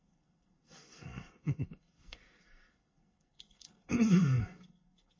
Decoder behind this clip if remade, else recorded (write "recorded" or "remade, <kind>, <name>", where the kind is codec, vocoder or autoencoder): remade, codec, SNAC